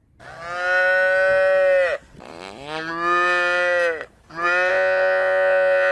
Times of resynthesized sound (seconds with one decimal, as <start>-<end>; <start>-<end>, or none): 4.7-5.9